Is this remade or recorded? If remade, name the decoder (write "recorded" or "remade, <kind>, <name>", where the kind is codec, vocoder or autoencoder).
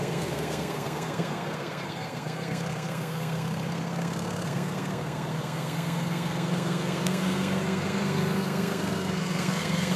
remade, codec, SNAC